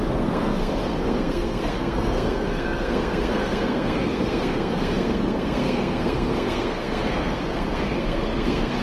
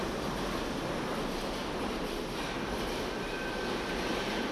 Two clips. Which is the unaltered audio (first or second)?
second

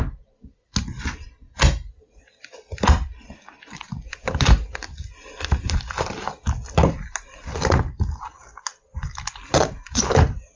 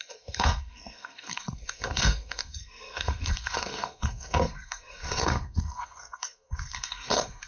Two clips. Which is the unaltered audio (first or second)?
first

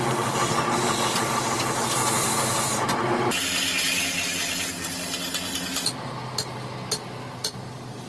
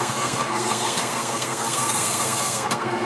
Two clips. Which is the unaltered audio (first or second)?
first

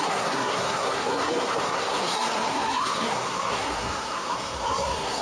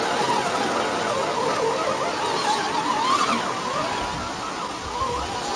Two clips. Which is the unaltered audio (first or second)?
second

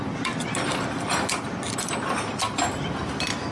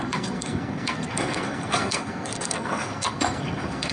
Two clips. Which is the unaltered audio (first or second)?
first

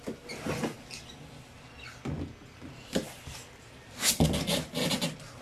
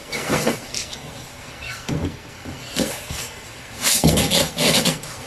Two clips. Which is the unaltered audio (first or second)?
first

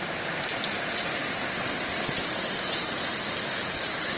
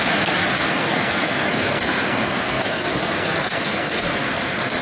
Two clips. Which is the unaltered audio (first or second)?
first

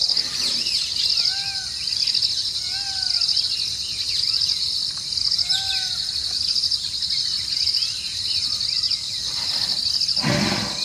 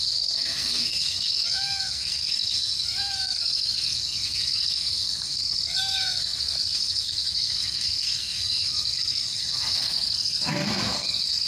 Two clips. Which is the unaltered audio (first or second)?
first